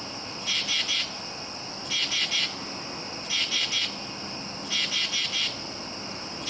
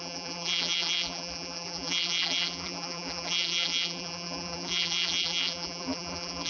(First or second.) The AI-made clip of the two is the second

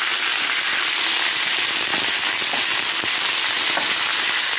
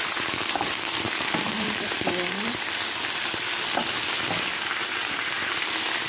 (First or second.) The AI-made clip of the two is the second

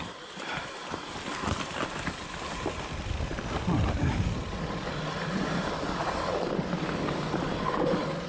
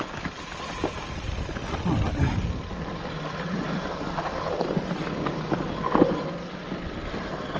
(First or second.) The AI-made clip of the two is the first